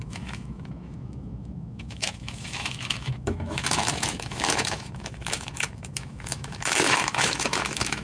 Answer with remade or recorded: remade